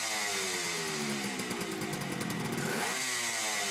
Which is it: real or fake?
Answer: real